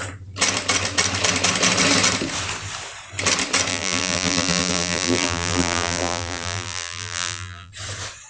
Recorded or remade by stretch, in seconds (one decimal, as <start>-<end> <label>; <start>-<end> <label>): 0.0-3.7 recorded; 3.7-7.7 remade; 7.7-8.3 recorded